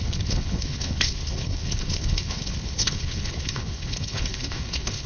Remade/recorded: remade